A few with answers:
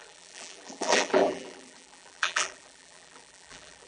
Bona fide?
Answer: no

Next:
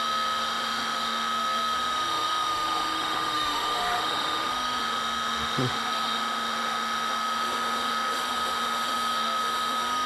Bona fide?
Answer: no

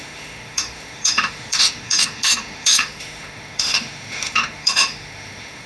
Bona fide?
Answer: no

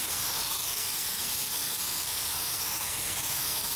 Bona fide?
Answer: no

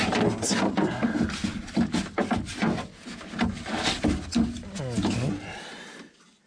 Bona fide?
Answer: yes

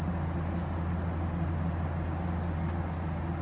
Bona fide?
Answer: yes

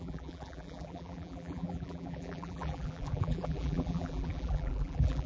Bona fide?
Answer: no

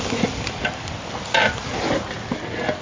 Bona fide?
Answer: yes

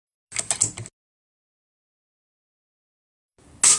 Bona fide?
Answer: yes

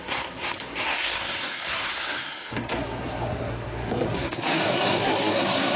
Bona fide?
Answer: no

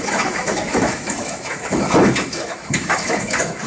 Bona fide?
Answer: no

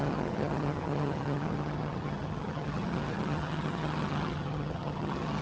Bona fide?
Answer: no